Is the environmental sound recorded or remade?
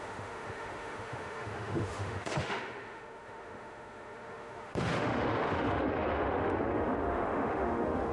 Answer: remade